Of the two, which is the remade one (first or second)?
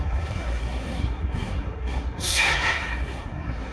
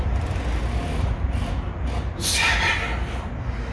first